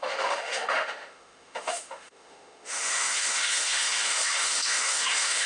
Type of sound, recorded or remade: remade